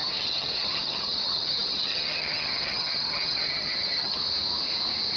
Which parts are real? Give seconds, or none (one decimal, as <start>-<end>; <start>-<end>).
4.2-5.2